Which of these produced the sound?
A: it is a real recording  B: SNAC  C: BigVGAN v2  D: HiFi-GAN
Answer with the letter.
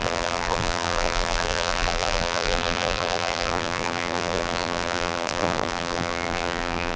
C